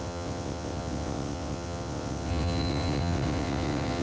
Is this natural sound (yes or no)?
no